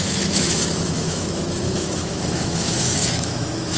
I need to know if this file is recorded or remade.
remade